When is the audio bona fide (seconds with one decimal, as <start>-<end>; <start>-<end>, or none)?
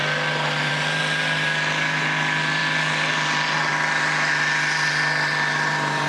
0.0-6.1